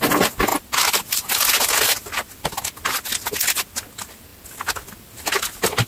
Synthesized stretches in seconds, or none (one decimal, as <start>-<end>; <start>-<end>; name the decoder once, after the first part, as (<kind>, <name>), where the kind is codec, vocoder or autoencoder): none